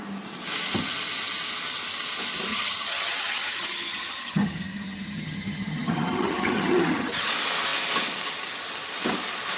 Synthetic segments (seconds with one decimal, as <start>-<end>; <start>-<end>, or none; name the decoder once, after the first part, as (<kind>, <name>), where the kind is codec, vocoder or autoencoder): 2.5-7.3 (vocoder, HiFi-GAN)